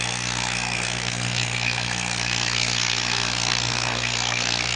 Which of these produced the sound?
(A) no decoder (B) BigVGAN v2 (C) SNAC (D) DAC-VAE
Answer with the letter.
C